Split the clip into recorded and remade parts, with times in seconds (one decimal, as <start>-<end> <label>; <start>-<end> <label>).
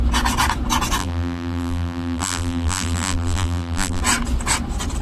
0.0-1.0 recorded; 1.0-4.0 remade; 4.0-5.0 recorded